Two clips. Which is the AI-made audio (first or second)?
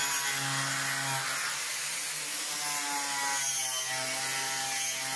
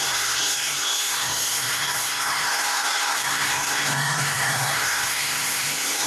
second